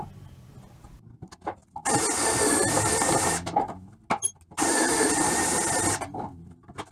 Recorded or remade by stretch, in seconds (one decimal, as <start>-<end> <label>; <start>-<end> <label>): 0.0-6.9 recorded